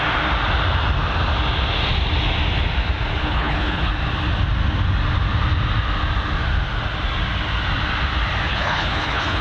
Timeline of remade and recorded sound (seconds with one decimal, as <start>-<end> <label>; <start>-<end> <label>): 0.0-3.2 recorded; 3.2-3.9 remade; 3.9-8.5 recorded; 8.5-9.4 remade